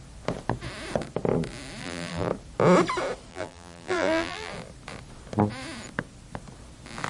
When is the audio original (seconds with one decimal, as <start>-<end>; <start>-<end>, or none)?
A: 0.0-1.8; 2.3-3.3; 4.5-7.1